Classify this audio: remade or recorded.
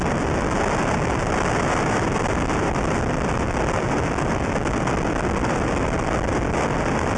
remade